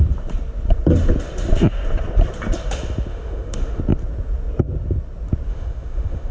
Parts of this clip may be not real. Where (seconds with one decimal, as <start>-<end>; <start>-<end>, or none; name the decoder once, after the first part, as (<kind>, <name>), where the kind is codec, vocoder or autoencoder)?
3.1-3.8 (autoencoder, DAC-VAE); 5.5-6.3